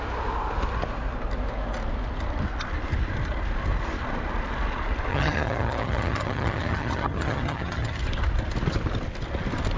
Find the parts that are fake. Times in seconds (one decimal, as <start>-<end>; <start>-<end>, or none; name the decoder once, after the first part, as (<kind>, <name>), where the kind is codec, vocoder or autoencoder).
5.1-8.0 (vocoder, HiFi-GAN)